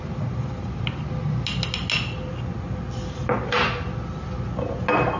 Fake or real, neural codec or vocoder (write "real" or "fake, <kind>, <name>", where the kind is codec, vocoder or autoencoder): real